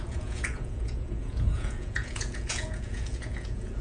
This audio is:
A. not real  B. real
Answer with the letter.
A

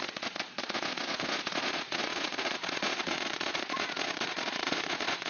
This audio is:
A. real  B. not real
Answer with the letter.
B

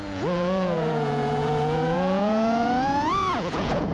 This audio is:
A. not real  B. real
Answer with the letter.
A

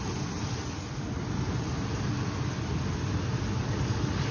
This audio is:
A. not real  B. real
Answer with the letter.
B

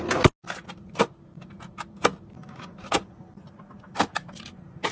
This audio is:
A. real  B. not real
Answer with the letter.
A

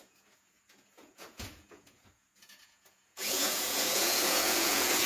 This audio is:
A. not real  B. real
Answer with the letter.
A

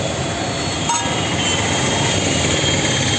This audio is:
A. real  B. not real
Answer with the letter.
A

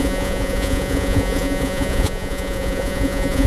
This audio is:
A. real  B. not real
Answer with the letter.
B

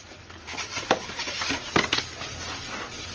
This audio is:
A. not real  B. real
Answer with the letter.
B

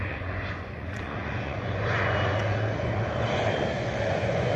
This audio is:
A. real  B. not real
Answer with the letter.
B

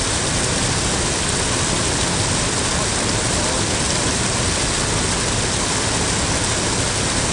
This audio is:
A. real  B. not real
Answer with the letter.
A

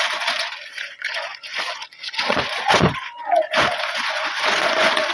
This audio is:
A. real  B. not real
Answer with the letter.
B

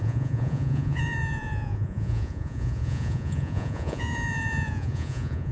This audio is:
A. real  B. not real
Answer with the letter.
B